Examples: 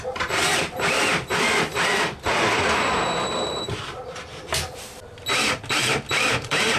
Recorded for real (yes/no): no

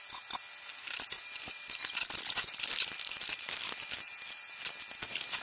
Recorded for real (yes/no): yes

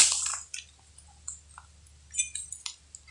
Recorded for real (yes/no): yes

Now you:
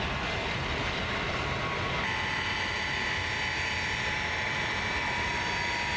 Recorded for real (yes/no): yes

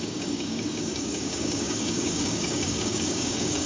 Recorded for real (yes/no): no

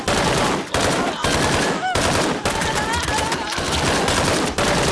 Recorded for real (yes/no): yes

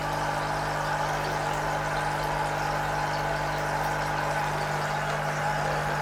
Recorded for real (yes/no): yes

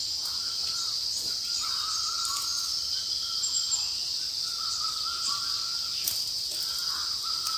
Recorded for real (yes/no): yes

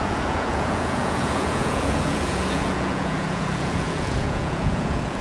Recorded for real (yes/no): no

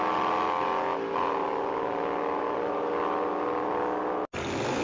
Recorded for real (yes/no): yes